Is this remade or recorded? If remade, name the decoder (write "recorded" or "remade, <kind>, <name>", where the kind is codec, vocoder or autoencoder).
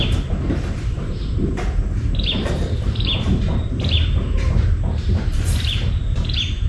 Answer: remade, vocoder, BigVGAN v2